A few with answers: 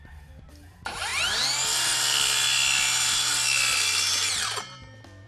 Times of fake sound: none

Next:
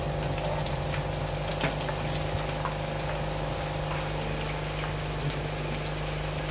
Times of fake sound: none

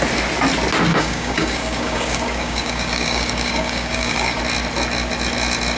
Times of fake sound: 0.9-4.4 (codec, DAC)